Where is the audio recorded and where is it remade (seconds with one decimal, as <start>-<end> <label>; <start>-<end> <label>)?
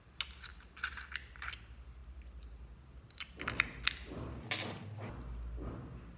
0.0-6.2 recorded